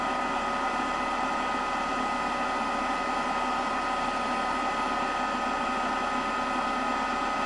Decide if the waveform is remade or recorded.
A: recorded